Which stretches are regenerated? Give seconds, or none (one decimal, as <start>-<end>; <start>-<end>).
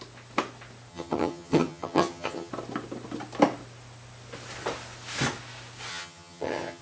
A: 0.9-2.5; 5.9-6.8